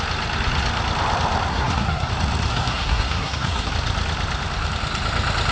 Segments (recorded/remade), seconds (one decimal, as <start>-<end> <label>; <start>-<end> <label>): 0.0-1.5 recorded; 1.5-2.1 remade; 2.1-2.5 recorded; 2.5-3.7 remade; 3.7-5.5 recorded